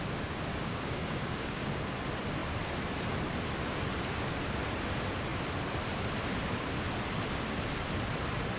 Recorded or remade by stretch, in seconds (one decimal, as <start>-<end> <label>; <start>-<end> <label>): 0.0-0.5 recorded; 0.5-1.7 remade; 1.7-8.6 recorded